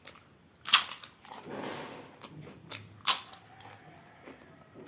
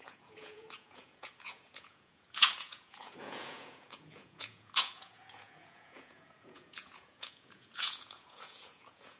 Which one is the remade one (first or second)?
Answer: second